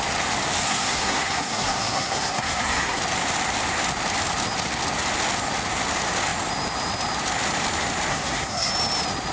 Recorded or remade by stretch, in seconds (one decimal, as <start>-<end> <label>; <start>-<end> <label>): 0.0-0.6 recorded; 0.6-3.0 remade; 3.0-8.1 recorded; 8.1-8.7 remade; 8.7-9.3 recorded